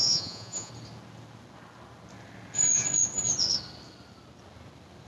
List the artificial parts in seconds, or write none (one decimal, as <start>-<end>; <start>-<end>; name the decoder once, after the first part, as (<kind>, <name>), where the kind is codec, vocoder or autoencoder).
0.0-0.7 (vocoder, Vocos)